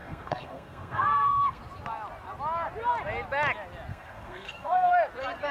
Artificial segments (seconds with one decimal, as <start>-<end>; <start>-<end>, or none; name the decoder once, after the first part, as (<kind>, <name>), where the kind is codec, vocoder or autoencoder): 0.0-1.6 (codec, SNAC); 3.9-4.9